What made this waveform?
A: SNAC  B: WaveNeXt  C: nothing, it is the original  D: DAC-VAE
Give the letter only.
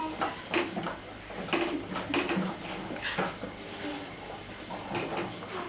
C